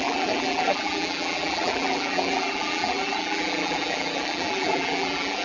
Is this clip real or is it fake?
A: fake